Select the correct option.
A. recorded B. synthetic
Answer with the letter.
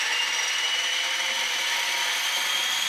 B